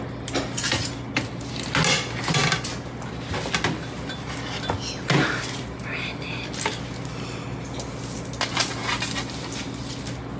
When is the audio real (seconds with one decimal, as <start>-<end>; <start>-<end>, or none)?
0.0-10.4